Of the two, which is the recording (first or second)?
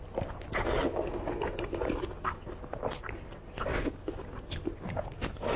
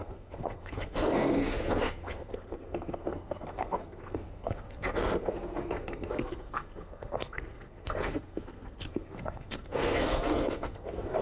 first